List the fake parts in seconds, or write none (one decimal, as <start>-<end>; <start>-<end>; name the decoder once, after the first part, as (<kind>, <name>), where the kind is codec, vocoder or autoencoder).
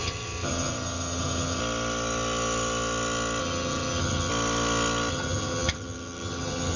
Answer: 0.0-1.6 (vocoder, HiFi-GAN); 3.4-4.3; 5.1-6.8